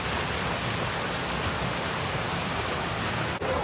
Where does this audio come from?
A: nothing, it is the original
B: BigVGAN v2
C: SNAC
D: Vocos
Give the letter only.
A